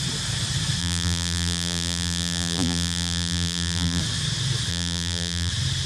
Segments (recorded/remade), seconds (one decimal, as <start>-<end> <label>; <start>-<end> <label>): 0.0-0.8 recorded; 0.8-4.0 remade; 4.0-4.7 recorded; 4.7-5.5 remade; 5.5-5.9 recorded